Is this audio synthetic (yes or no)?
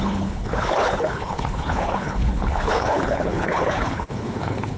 yes